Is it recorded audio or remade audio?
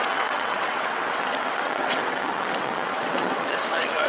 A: remade